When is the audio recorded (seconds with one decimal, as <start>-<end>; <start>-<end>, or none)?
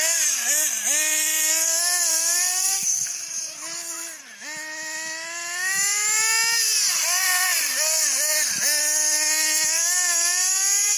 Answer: 0.0-2.1; 3.2-11.0